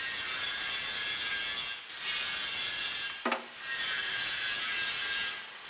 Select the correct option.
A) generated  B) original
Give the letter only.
B